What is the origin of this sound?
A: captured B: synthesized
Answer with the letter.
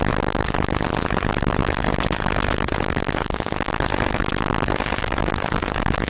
A